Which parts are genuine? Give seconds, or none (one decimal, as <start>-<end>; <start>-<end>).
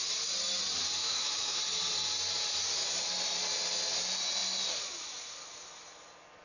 0.0-1.0; 1.6-6.4